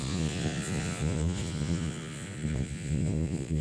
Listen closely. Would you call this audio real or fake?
fake